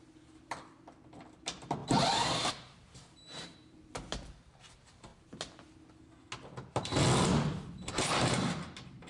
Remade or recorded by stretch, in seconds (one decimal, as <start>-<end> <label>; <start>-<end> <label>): 0.0-1.8 remade; 1.8-2.5 recorded; 2.5-5.1 remade; 5.1-7.9 recorded; 7.9-9.1 remade